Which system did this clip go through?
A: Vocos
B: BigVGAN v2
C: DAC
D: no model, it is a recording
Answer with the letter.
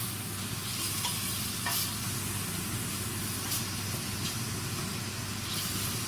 D